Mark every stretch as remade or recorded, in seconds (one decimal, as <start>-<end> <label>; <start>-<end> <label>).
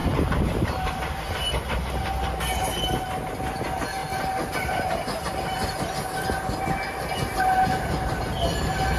0.0-9.0 recorded